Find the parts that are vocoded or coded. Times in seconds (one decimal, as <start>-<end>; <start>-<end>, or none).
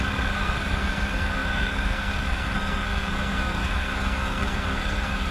0.0-5.3